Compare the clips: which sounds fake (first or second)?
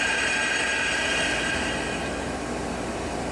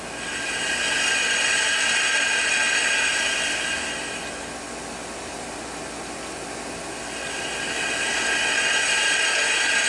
first